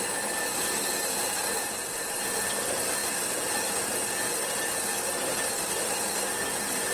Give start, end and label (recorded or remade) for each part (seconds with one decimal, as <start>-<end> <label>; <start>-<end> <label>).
0.0-6.9 recorded